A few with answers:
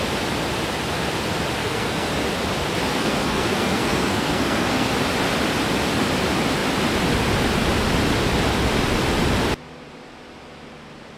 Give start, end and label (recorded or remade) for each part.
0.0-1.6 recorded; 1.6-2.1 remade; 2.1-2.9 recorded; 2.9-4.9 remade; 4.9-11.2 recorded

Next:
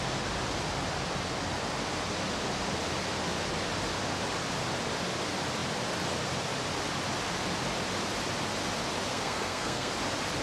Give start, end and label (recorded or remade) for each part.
0.0-9.1 recorded; 9.1-9.9 remade; 9.9-10.4 recorded

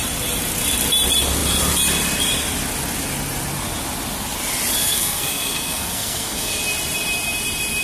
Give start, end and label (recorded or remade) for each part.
0.0-4.8 recorded; 4.8-6.6 remade; 6.6-7.8 recorded

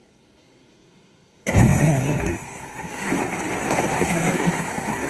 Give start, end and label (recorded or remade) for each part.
0.0-3.1 remade; 3.1-3.6 recorded; 3.6-5.1 remade

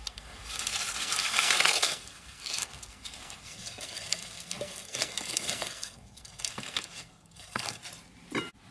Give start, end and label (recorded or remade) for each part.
0.0-7.8 remade; 7.8-8.7 recorded

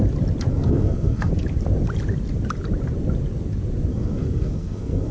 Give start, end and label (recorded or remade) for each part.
0.0-0.5 recorded; 0.5-1.3 remade; 1.3-3.9 recorded; 3.9-5.1 remade

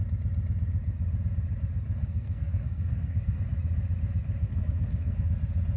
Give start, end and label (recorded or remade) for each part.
0.0-2.0 recorded; 2.0-3.4 remade; 3.4-4.4 recorded; 4.4-5.3 remade; 5.3-5.8 recorded

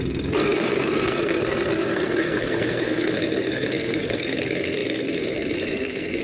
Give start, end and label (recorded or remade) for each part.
0.0-6.2 remade